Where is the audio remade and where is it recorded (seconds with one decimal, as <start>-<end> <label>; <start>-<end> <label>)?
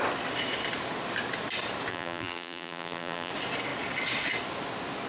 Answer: 0.0-1.9 recorded; 1.9-3.3 remade; 3.3-5.1 recorded